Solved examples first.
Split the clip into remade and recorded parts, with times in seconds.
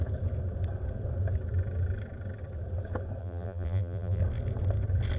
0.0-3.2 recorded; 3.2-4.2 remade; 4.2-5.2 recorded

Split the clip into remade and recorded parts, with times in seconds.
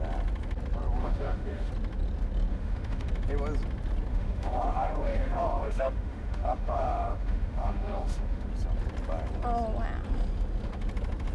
0.0-1.0 recorded; 1.0-1.7 remade; 1.7-2.5 recorded; 2.5-3.1 remade; 3.1-4.1 recorded; 4.1-8.5 remade; 8.5-11.3 recorded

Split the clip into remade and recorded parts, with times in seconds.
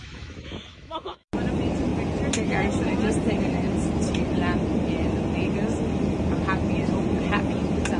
0.0-1.3 remade; 1.3-8.0 recorded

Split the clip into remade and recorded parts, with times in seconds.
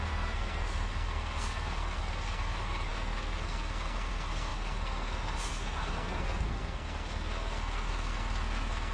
0.0-8.9 remade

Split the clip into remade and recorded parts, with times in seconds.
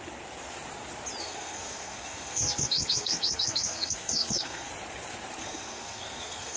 0.0-1.2 recorded; 1.2-4.7 remade; 4.7-5.4 recorded; 5.4-6.6 remade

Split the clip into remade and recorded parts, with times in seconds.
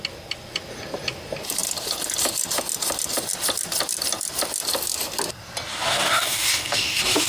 0.0-5.7 recorded; 5.7-7.3 remade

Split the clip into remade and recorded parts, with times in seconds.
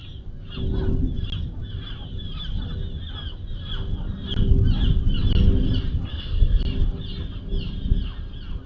0.0-6.1 recorded; 6.1-6.6 remade; 6.6-8.7 recorded